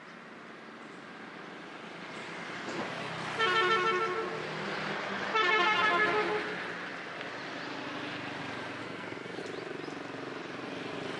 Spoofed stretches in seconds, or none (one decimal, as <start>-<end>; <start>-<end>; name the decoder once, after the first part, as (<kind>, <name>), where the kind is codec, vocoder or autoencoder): 8.8-9.4 (codec, SNAC)